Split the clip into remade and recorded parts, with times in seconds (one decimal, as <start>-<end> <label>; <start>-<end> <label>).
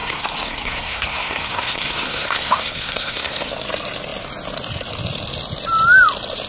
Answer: 0.0-3.5 remade; 3.5-6.5 recorded